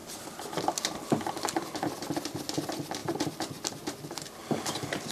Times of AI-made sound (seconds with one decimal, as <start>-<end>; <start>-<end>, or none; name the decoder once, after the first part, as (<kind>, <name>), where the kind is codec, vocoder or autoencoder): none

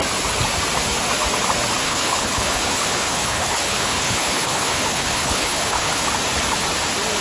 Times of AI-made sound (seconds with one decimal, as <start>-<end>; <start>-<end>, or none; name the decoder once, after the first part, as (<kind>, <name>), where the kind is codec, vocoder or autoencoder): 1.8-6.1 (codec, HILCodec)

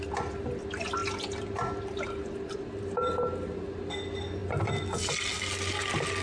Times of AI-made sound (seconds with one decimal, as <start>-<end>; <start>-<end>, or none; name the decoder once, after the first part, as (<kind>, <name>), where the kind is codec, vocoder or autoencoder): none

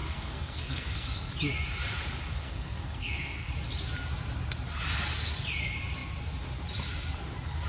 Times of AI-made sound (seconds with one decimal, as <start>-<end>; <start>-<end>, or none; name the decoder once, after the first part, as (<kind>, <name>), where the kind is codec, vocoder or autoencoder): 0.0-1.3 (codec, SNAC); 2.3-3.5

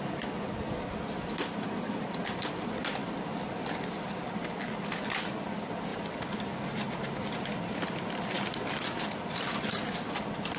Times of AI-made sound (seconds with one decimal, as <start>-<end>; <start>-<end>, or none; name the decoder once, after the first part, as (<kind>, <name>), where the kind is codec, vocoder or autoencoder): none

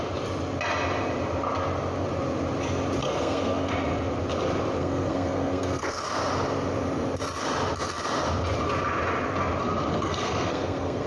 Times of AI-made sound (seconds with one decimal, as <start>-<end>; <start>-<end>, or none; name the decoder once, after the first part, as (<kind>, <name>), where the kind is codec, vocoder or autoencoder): 3.0-3.7 (codec, SNAC); 4.8-6.0; 9.9-11.1